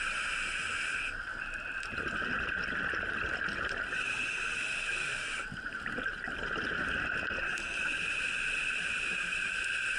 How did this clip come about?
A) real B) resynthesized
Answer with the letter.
A